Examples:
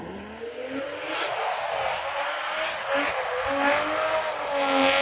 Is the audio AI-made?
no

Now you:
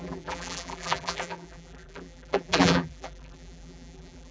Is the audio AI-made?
yes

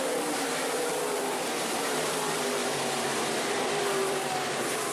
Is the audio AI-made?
yes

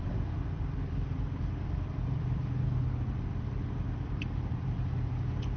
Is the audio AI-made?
yes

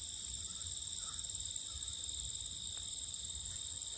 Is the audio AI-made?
no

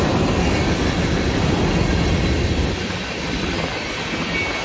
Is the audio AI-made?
no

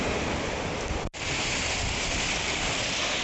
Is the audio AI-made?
no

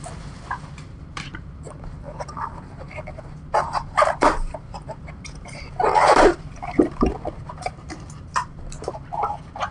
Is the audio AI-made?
yes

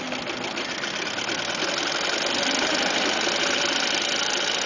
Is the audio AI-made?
no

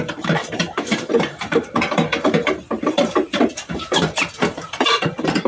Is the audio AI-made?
yes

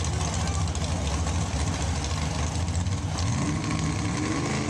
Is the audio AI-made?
no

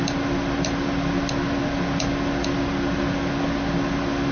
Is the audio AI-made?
no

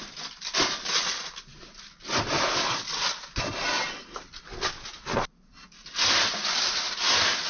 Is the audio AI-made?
no